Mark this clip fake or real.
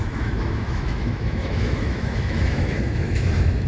fake